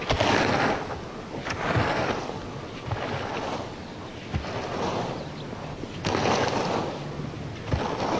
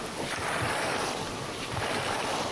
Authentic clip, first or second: first